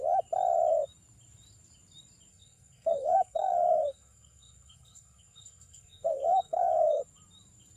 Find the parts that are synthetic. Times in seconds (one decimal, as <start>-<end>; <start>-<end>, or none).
2.3-7.0